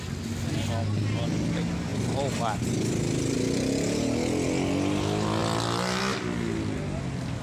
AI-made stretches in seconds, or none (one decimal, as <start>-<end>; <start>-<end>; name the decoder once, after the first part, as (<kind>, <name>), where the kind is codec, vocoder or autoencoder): none